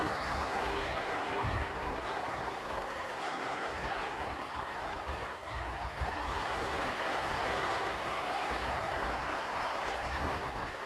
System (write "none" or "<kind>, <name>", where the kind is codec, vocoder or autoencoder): codec, SNAC